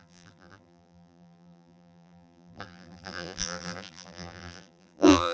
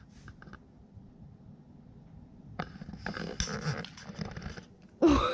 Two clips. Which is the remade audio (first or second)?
first